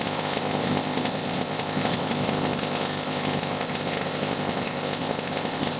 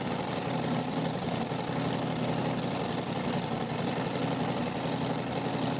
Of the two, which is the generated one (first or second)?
first